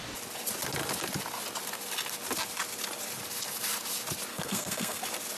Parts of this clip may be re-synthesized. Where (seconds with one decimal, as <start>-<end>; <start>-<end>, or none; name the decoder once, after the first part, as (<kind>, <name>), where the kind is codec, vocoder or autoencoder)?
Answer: 4.3-5.0 (codec, SNAC)